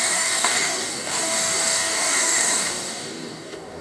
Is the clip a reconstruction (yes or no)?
yes